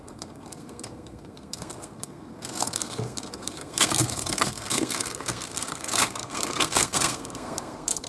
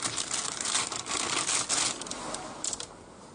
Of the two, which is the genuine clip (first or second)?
second